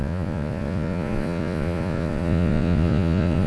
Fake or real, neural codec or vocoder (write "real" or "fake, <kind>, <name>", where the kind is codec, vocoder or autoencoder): fake, vocoder, Vocos